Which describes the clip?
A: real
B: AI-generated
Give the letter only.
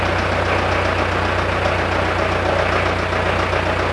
A